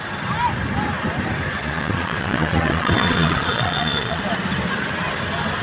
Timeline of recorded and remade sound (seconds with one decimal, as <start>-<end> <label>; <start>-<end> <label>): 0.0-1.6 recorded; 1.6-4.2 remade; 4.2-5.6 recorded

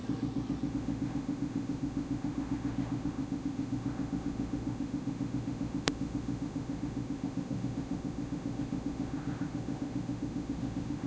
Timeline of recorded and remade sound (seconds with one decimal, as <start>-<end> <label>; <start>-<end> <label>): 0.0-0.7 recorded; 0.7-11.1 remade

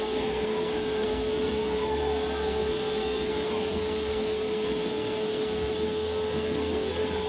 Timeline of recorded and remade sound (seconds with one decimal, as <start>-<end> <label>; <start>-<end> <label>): 0.0-7.3 remade

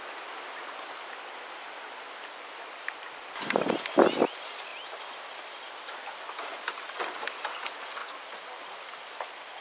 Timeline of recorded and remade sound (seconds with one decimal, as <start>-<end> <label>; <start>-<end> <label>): 0.0-9.6 recorded